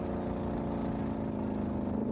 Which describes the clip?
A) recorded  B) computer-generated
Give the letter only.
A